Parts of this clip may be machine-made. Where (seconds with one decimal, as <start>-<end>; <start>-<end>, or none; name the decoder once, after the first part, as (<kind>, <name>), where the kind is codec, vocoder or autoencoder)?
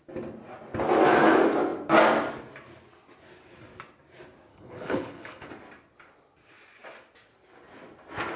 4.5-5.5 (codec, HILCodec)